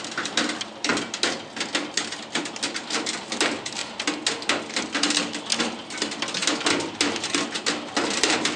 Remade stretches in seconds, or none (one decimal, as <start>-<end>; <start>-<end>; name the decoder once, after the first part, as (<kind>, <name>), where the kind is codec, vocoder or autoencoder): 0.0-0.9 (vocoder, BigVGAN v2); 2.2-3.8; 5.6-6.4; 7.2-8.6